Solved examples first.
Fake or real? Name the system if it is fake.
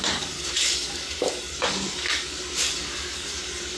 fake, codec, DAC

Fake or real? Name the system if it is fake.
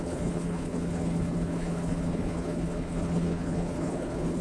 fake, codec, HILCodec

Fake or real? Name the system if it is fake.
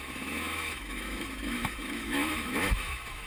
fake, autoencoder, DAC-VAE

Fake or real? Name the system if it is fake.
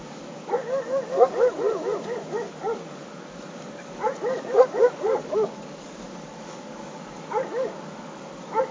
fake, codec, DAC